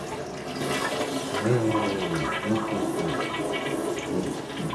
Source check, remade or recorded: recorded